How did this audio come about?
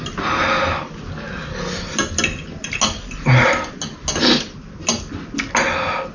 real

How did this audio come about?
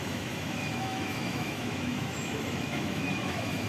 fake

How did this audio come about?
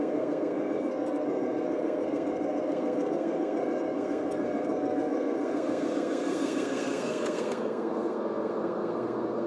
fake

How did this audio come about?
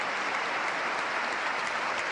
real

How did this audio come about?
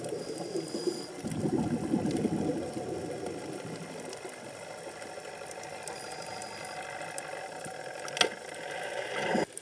real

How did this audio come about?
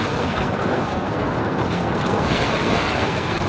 fake